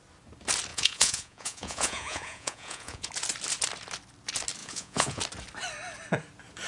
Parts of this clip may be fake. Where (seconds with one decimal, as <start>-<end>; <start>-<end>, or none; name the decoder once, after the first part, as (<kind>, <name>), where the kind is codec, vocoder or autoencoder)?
0.7-3.1 (vocoder, Vocos); 4.6-5.2